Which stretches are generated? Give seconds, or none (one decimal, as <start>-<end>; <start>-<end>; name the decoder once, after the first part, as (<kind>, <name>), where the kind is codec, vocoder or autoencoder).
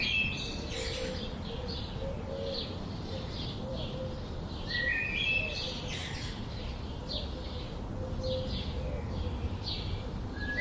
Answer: none